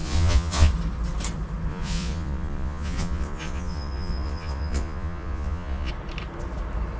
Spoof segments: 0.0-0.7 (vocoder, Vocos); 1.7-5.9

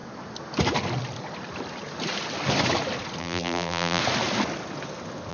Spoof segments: 3.2-4.0 (vocoder, BigVGAN v2)

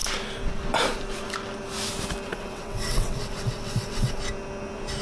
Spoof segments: 2.3-4.2 (vocoder, WaveNeXt)

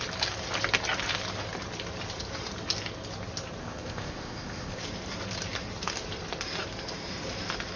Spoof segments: 3.6-4.8 (codec, ZipCodec)

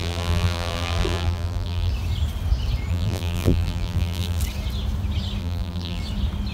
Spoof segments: 0.0-1.9 (vocoder, BigVGAN v2); 2.9-4.4; 5.4-6.0

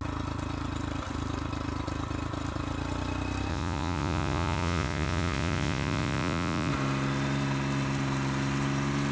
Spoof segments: 3.5-6.7 (vocoder, Vocos)

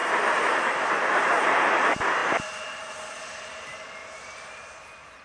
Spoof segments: 0.0-1.7 (vocoder, BigVGAN v2); 4.0-4.5

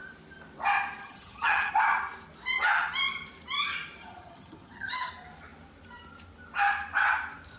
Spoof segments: 1.0-1.7 (vocoder, HiFi-GAN); 4.0-5.1